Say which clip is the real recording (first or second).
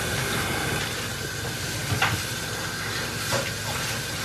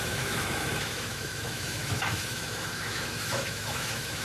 first